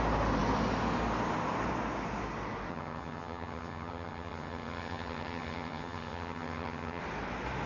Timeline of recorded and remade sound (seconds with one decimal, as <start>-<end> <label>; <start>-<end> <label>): 0.0-2.7 recorded; 2.7-7.0 remade; 7.0-7.7 recorded